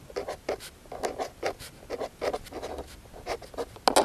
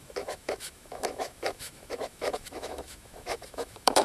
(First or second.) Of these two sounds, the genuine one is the first